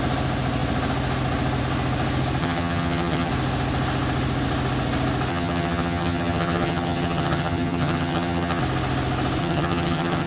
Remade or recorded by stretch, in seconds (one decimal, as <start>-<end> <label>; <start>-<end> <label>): 0.0-2.4 recorded; 2.4-3.3 remade; 3.3-5.3 recorded; 5.3-8.6 remade; 8.6-9.4 recorded; 9.4-10.3 remade